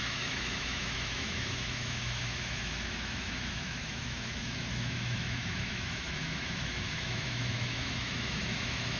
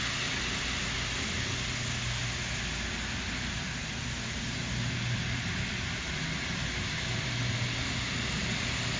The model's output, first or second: first